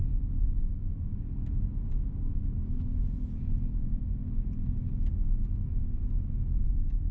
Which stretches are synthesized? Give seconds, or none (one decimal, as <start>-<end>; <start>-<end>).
none